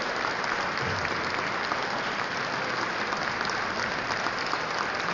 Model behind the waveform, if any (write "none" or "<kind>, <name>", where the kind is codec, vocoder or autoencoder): none